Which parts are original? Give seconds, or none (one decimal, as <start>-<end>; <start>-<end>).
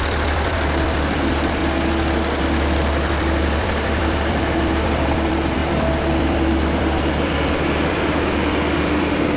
1.6-2.4